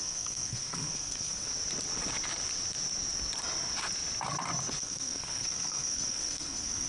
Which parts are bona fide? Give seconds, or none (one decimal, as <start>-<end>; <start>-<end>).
1.5-4.8